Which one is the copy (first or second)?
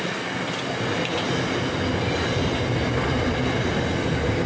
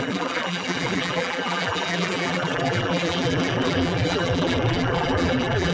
second